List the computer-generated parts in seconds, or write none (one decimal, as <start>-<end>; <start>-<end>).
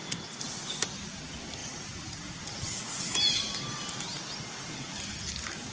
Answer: none